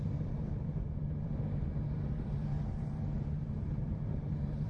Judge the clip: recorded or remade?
remade